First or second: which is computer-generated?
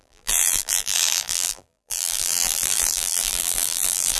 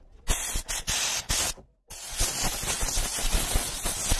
first